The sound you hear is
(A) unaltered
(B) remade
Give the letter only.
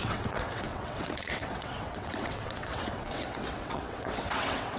B